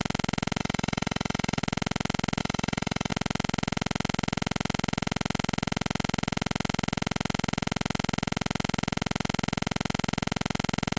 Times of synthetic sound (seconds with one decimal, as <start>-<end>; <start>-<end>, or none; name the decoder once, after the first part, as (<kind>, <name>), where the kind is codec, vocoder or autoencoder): 0.6-1.6 (autoencoder, DAC-VAE); 2.4-3.1